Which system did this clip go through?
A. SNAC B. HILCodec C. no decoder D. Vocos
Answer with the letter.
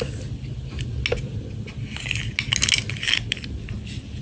C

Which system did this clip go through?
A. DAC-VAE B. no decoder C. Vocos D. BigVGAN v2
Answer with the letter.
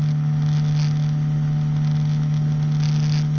B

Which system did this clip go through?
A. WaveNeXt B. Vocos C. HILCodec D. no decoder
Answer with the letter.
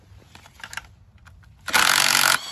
D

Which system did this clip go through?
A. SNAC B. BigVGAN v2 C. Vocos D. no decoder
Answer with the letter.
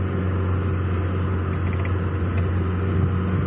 D